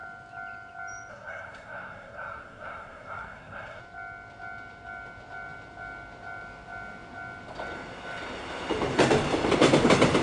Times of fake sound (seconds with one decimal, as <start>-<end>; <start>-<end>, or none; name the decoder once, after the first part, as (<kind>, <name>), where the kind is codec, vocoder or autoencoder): 1.1-3.8 (codec, SNAC)